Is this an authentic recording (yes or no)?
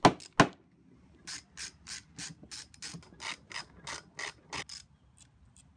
yes